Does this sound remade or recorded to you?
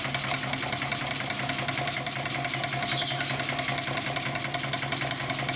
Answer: recorded